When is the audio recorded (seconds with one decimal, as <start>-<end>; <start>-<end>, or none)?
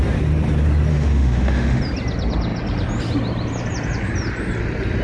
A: 0.0-0.9; 1.8-5.0